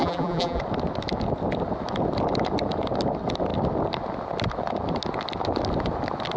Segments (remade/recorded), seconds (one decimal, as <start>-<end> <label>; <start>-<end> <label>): 0.0-0.6 remade; 0.6-6.4 recorded